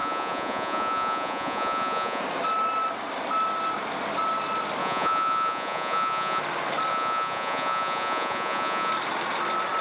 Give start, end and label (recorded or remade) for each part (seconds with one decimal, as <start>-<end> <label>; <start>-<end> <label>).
0.0-2.2 remade; 2.2-4.8 recorded; 4.8-6.4 remade; 6.4-6.9 recorded; 6.9-8.9 remade; 8.9-9.8 recorded